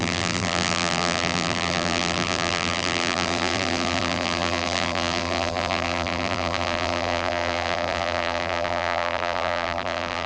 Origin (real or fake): fake